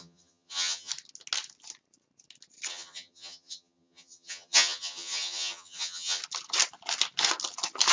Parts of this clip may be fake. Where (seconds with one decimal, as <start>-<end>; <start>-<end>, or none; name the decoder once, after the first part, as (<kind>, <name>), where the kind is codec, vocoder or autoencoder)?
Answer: 0.0-0.9 (vocoder, HiFi-GAN); 2.7-6.2